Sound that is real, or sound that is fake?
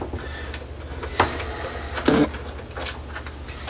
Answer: real